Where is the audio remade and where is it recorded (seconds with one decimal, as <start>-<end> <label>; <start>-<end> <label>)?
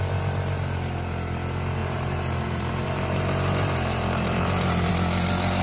0.0-1.8 recorded; 1.8-4.9 remade; 4.9-5.6 recorded